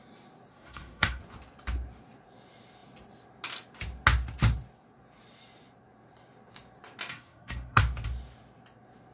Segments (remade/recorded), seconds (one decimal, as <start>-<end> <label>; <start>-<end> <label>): 0.0-0.5 recorded; 0.5-1.2 remade; 1.2-7.1 recorded; 7.1-7.8 remade; 7.8-9.1 recorded